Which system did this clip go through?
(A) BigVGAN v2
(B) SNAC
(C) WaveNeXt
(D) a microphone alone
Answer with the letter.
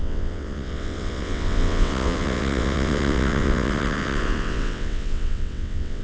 C